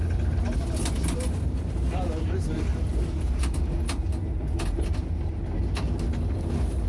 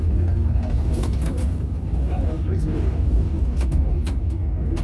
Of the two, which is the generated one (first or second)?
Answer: second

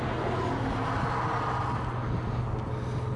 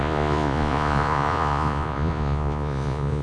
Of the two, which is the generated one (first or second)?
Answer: second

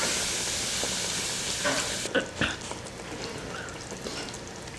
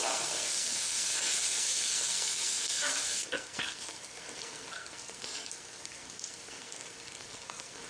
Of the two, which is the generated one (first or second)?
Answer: second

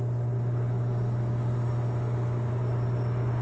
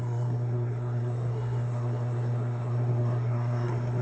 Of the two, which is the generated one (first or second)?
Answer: second